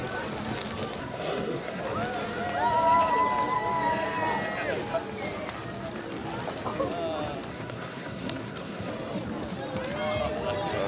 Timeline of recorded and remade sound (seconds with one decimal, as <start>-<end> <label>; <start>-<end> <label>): 0.0-1.0 recorded; 1.0-1.8 remade; 1.8-7.5 recorded; 7.5-8.9 remade; 8.9-10.9 recorded